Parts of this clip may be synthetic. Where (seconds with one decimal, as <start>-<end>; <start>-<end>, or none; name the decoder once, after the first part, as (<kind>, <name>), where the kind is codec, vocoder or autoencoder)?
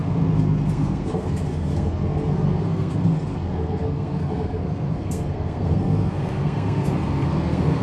0.0-7.8 (codec, SNAC)